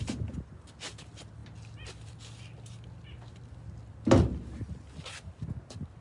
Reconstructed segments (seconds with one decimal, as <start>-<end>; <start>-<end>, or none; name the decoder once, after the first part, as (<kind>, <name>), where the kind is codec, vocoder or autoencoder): none